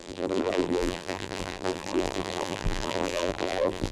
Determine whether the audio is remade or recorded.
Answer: remade